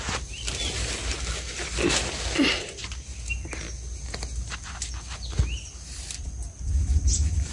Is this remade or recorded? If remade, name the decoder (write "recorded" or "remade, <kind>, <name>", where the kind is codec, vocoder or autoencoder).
recorded